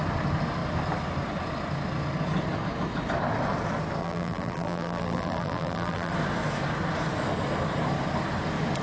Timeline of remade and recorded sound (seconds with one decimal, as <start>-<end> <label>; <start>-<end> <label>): 0.0-4.0 recorded; 4.0-6.1 remade; 6.1-8.8 recorded